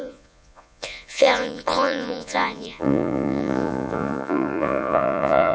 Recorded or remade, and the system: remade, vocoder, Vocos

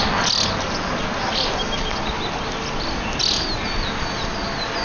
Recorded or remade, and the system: recorded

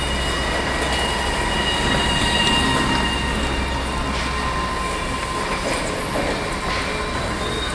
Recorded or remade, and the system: recorded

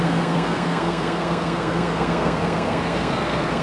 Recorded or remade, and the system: remade, codec, SNAC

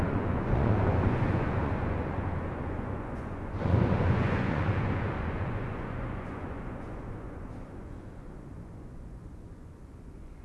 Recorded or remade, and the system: remade, vocoder, Vocos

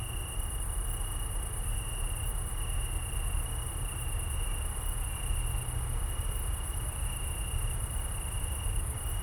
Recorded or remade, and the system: recorded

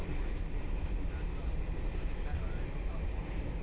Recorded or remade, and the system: recorded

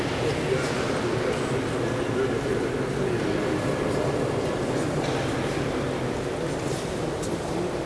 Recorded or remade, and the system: recorded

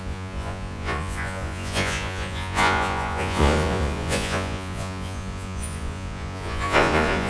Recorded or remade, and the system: remade, vocoder, Vocos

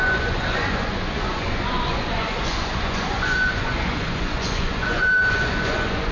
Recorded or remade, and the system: remade, vocoder, Vocos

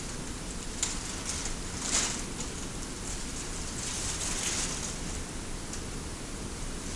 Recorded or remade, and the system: recorded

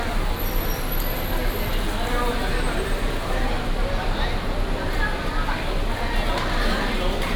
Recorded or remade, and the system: recorded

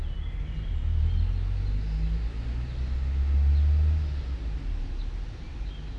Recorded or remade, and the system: recorded